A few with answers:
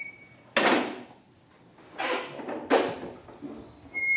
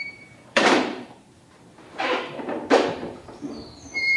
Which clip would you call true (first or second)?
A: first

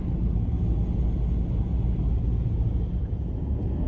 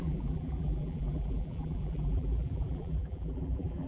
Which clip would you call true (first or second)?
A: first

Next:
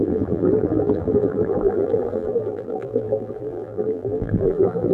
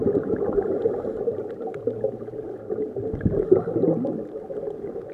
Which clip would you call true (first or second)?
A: second